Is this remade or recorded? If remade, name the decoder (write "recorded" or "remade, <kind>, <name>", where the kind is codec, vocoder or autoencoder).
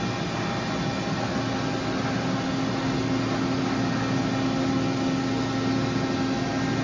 recorded